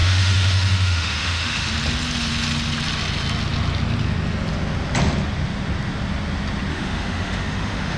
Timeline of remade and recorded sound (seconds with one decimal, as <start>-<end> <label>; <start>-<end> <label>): 0.0-1.7 remade; 1.7-6.7 recorded; 6.7-8.0 remade